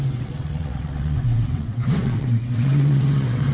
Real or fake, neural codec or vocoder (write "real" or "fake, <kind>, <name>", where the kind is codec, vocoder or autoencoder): fake, vocoder, WaveNeXt